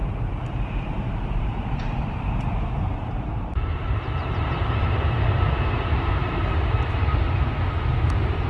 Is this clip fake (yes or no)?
yes